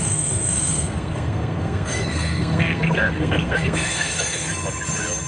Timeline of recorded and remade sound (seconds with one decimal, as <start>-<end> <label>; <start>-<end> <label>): 0.0-4.5 remade; 4.5-5.3 recorded